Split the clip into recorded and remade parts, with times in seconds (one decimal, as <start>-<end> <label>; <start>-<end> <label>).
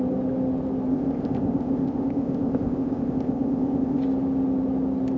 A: 0.0-0.9 recorded; 0.9-4.0 remade; 4.0-5.2 recorded